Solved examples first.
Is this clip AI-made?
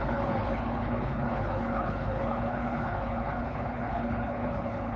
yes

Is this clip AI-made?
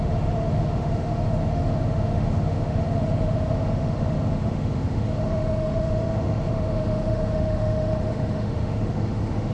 yes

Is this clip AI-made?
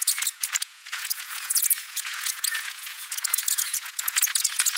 yes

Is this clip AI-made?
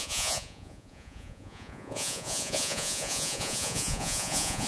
yes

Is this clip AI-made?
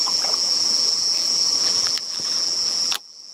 yes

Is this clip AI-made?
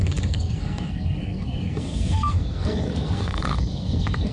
yes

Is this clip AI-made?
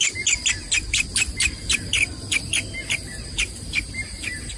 no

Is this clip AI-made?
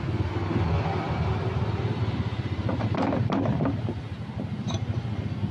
no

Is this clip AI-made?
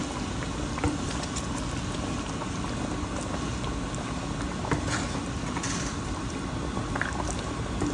no